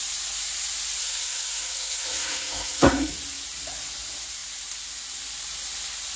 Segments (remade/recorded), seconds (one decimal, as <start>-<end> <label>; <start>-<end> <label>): 0.0-1.0 recorded; 1.0-3.1 remade; 3.1-6.2 recorded